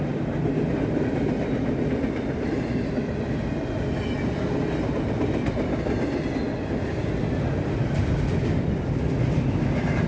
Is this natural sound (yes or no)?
yes